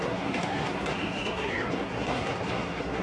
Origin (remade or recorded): remade